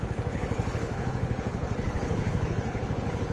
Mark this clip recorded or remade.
remade